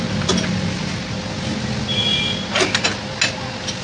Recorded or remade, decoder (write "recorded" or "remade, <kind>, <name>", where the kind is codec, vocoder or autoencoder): recorded